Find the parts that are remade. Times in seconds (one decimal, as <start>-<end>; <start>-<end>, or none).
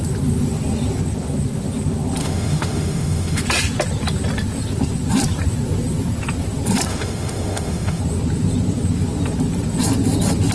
2.2-3.4; 6.9-8.0